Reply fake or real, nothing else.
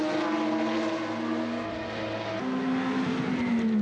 real